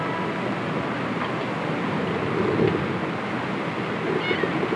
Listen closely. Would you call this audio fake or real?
real